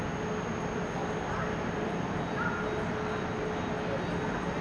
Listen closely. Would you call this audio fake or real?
real